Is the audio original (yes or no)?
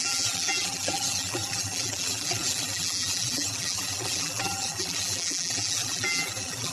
no